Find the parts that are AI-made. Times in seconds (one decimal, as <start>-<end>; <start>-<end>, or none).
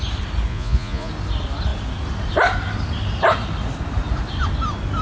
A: 0.5-1.1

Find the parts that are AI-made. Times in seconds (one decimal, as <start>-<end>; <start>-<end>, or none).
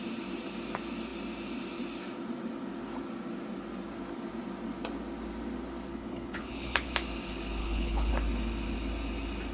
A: 5.9-6.9; 7.6-8.1